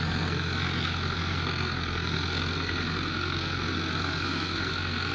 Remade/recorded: remade